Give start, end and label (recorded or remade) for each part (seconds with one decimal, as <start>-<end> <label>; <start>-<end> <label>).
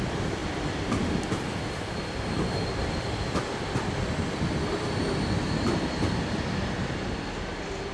0.0-0.4 recorded; 0.4-4.4 remade; 4.4-7.9 recorded